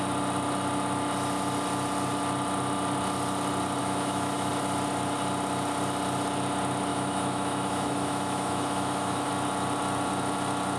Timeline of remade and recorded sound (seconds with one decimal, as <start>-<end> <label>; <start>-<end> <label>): 0.0-3.8 recorded; 3.8-4.5 remade; 4.5-6.9 recorded; 6.9-9.3 remade; 9.3-10.8 recorded